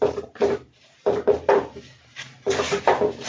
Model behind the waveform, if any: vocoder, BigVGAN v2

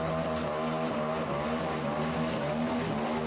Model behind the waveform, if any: none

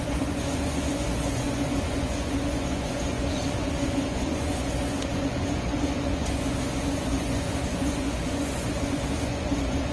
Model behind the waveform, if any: vocoder, Vocos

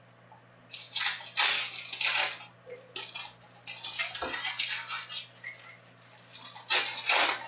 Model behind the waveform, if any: none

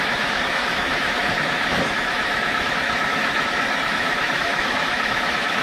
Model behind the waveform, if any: autoencoder, DAC-VAE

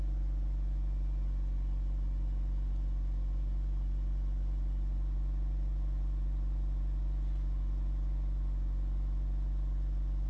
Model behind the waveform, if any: none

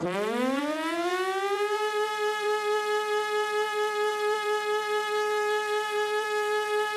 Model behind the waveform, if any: vocoder, BigVGAN v2